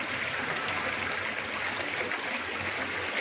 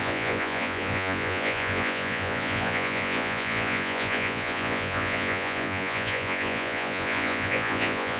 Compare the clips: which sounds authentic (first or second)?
first